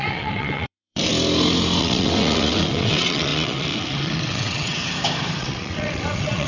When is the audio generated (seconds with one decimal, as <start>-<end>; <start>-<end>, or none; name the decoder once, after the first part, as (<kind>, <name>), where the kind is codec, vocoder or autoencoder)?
0.0-1.1 (vocoder, WaveNeXt); 1.8-4.8; 5.4-6.5